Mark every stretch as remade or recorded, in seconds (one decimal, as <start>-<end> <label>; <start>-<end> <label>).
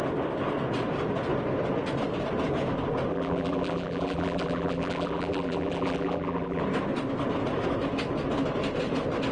0.0-3.1 recorded; 3.1-6.6 remade; 6.6-9.3 recorded